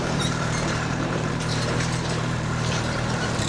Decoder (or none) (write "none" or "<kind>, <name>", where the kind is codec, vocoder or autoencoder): vocoder, BigVGAN v2